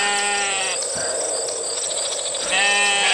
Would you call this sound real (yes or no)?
yes